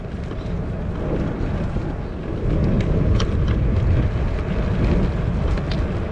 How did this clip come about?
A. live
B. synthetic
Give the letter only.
A